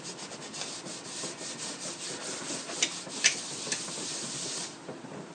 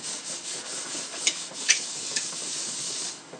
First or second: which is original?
first